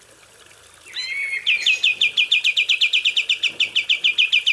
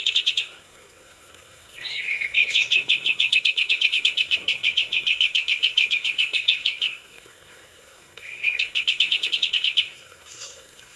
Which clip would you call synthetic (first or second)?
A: second